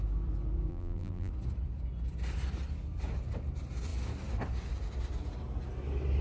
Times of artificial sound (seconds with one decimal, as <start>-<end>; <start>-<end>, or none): 0.7-1.3